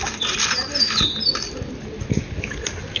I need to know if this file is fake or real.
real